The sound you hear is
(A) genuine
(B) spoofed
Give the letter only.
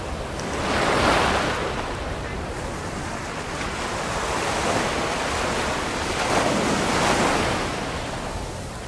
A